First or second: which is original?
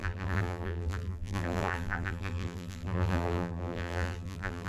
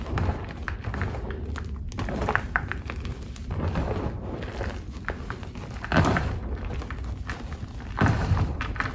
second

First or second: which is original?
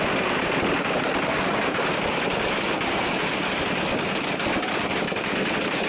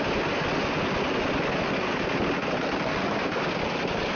second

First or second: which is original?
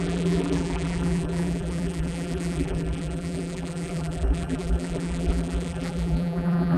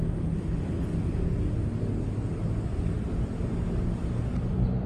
second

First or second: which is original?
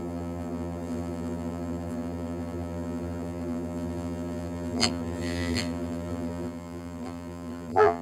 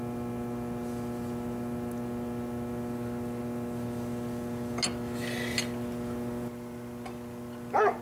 second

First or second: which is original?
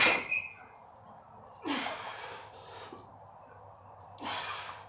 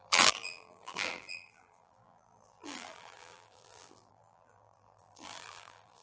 first